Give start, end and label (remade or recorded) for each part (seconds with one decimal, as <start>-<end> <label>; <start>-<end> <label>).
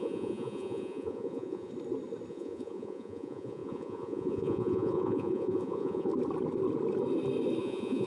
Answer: 0.0-1.7 remade; 1.7-2.3 recorded; 2.3-6.1 remade; 6.1-7.6 recorded; 7.6-8.1 remade